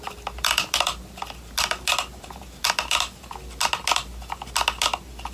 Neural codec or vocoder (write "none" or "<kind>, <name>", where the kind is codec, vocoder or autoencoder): none